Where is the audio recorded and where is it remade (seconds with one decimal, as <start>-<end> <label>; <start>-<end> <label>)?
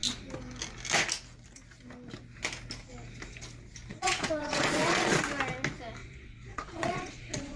0.0-3.9 recorded; 3.9-5.2 remade; 5.2-6.0 recorded; 6.0-7.6 remade